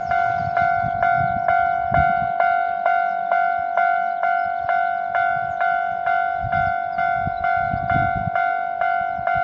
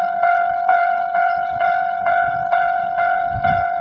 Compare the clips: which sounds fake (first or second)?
second